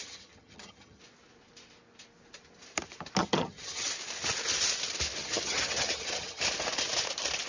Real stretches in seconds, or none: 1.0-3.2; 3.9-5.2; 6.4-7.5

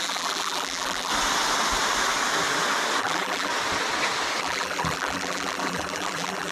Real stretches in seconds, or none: 1.1-3.0; 3.5-4.4